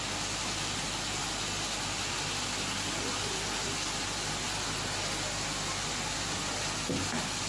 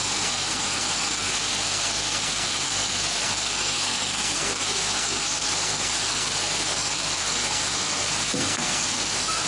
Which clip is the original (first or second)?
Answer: first